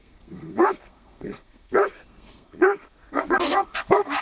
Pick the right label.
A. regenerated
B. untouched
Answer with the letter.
A